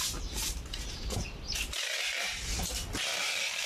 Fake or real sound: real